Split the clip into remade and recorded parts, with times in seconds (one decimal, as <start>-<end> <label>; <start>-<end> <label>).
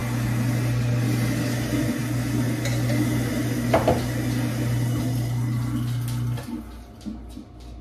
0.0-7.8 recorded